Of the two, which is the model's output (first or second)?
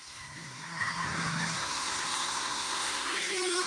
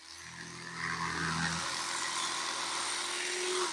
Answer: first